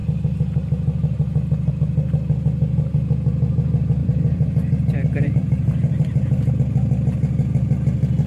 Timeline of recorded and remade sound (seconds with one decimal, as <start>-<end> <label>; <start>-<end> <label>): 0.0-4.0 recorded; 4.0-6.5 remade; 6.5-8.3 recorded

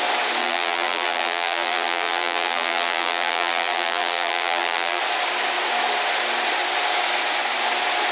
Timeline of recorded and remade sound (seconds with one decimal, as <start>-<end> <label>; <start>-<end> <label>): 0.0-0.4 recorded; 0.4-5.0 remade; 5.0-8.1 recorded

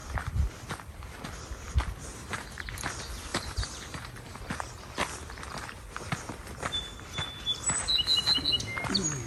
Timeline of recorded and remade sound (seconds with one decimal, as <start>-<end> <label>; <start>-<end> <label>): 0.0-2.1 recorded; 2.1-2.7 remade; 2.7-3.3 recorded; 3.3-4.4 remade; 4.4-9.3 recorded

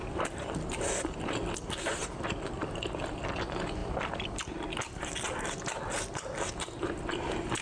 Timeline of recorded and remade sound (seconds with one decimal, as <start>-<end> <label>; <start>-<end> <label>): 0.0-2.5 remade; 2.5-3.8 recorded; 3.8-7.6 remade